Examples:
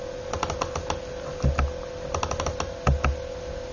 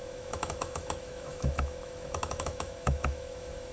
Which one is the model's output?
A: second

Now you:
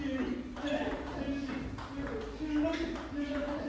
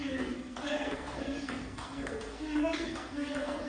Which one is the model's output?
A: second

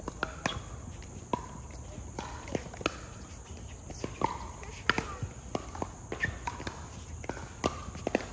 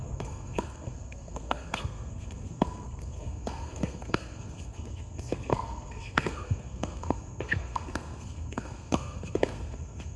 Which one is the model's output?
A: second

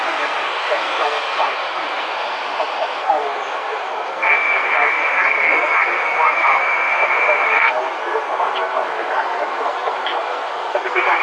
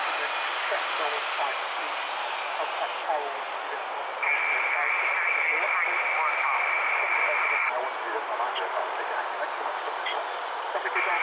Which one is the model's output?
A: first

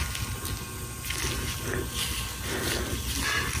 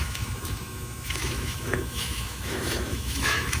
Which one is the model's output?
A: second